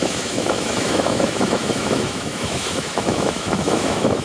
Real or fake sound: fake